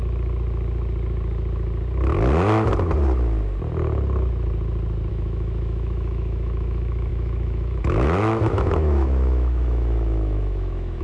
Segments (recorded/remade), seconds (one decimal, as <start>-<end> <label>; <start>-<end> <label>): 0.0-5.1 recorded; 5.1-11.0 remade